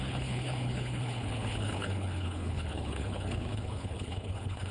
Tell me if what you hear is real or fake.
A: fake